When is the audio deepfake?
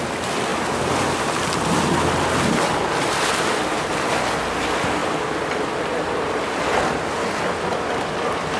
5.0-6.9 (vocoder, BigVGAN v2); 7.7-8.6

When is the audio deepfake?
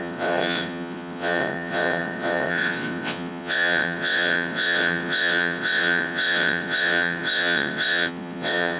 0.0-8.8 (vocoder, WaveNeXt)